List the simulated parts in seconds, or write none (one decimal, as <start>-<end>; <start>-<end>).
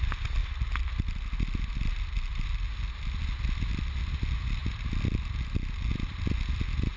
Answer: none